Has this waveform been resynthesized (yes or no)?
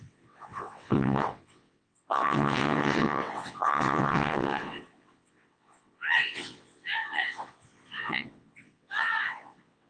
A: yes